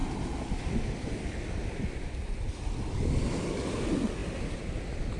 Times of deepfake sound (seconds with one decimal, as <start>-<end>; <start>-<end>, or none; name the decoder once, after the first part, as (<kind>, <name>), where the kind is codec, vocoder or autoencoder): none